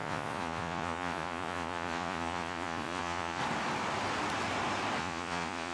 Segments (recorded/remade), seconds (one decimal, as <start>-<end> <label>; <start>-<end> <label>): 0.0-3.4 remade; 3.4-5.0 recorded; 5.0-5.7 remade